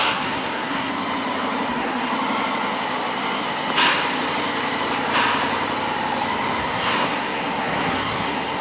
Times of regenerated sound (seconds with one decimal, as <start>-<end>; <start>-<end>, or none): 0.0-0.9; 1.7-2.1; 6.6-8.6

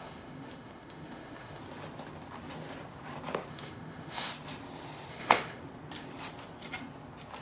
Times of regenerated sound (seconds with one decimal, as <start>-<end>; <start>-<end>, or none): 0.0-1.6; 3.5-4.3; 5.1-5.6